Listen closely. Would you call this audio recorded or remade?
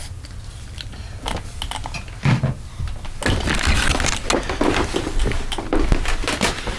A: recorded